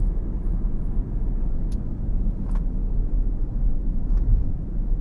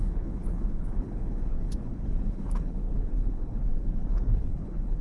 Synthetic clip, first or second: second